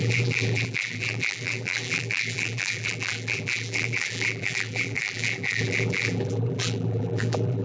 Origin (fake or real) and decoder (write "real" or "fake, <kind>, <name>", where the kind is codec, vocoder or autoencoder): fake, vocoder, BigVGAN v2